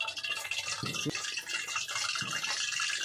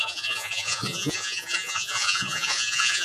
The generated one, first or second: second